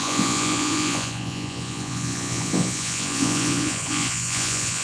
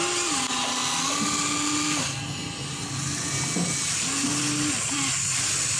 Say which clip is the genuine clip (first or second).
second